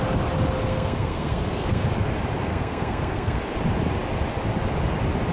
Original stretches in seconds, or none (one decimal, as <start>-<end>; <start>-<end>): 0.0-0.7; 1.8-2.5; 3.4-5.3